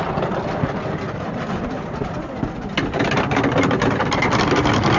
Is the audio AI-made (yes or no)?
no